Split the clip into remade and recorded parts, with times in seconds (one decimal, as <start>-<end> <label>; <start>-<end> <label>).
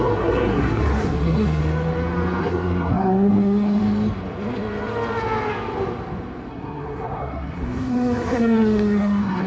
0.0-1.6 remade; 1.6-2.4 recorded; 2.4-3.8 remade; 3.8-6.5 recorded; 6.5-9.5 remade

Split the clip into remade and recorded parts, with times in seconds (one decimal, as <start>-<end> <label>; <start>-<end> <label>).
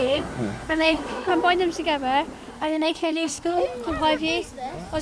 0.0-1.3 remade; 1.3-2.5 recorded; 2.5-3.6 remade; 3.6-5.0 recorded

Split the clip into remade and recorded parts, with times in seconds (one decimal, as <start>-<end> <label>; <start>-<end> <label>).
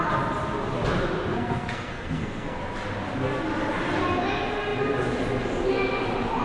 0.0-1.3 recorded; 1.3-2.6 remade; 2.6-6.4 recorded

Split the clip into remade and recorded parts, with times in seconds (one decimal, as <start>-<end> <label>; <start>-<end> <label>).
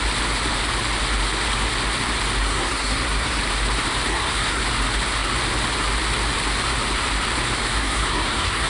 0.0-2.4 recorded; 2.4-3.4 remade; 3.4-4.1 recorded; 4.1-4.6 remade; 4.6-7.7 recorded; 7.7-8.7 remade